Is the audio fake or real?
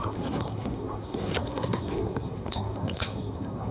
fake